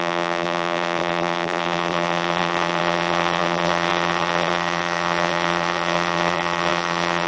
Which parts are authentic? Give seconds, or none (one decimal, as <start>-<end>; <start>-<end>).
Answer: none